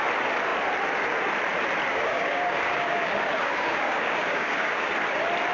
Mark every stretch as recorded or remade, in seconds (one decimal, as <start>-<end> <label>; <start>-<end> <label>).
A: 0.0-1.9 recorded; 1.9-4.9 remade; 4.9-5.5 recorded